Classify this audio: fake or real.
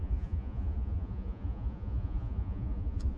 fake